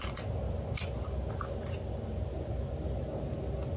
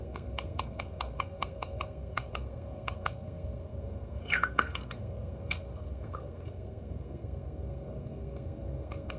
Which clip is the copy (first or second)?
second